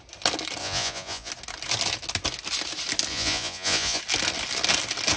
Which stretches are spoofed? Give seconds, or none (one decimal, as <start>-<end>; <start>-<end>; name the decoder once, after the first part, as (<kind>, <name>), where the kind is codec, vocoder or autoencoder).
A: 0.6-1.3 (vocoder, Vocos); 3.1-4.0